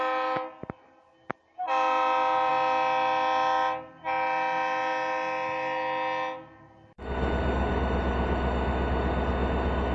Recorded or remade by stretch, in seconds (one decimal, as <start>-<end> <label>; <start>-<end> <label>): 0.0-9.9 recorded